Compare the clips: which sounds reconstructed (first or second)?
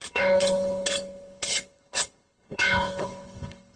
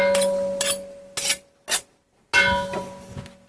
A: first